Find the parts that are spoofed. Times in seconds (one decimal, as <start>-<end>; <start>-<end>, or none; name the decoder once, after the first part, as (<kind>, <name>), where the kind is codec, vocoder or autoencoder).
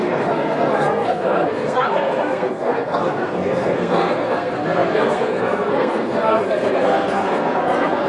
0.0-8.1 (codec, SNAC)